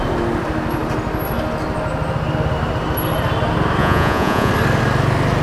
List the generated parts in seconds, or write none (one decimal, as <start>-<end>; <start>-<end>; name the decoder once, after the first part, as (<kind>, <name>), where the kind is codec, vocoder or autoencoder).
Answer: 3.8-4.5 (vocoder, Vocos)